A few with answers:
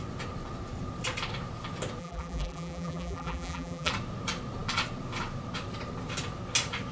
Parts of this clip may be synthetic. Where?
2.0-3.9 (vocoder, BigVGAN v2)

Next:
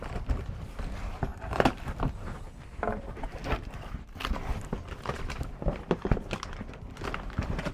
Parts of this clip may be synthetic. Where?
3.4-6.3 (vocoder, BigVGAN v2)

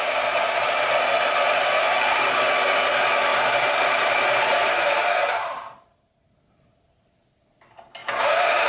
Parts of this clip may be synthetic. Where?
3.3-6.0 (vocoder, BigVGAN v2); 8.0-8.7

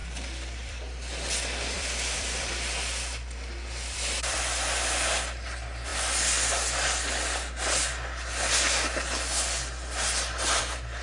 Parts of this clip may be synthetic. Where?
0.0-4.4 (vocoder, BigVGAN v2)